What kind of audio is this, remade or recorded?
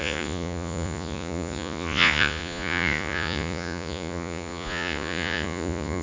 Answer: remade